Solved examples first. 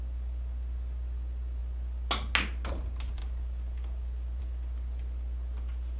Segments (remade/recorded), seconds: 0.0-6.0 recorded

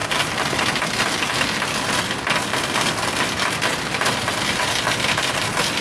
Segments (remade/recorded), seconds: 0.0-3.5 recorded; 3.5-5.8 remade